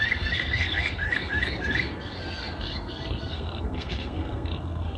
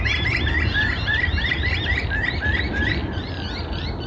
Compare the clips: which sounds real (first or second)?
second